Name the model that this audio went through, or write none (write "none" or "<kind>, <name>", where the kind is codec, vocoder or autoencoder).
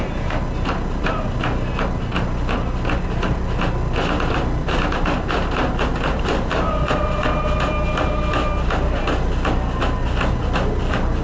none